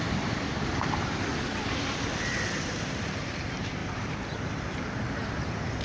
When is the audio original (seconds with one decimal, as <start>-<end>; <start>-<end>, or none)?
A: 1.3-2.5